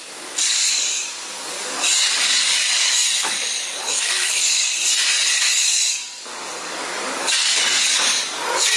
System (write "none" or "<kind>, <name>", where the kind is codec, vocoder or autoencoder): codec, DAC